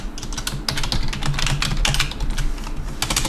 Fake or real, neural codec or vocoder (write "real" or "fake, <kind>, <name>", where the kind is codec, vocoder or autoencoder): real